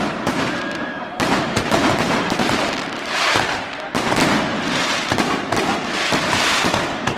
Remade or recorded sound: remade